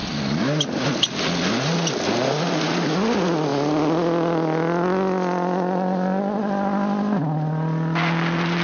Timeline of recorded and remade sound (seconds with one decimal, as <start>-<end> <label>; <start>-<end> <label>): 0.0-8.6 recorded